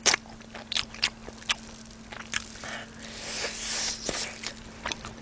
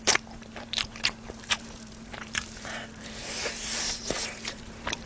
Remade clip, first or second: second